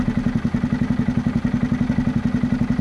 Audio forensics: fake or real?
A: real